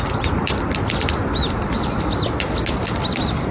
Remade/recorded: recorded